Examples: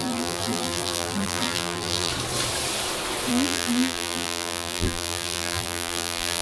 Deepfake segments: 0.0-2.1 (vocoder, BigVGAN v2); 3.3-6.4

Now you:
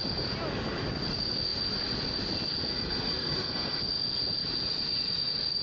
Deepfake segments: 2.7-3.8 (codec, SNAC)

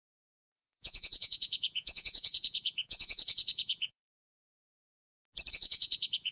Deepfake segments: 0.0-4.3 (vocoder, Vocos); 5.5-6.3